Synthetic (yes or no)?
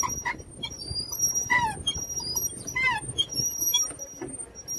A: no